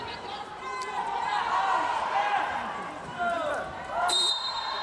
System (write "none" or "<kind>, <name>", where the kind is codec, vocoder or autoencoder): vocoder, BigVGAN v2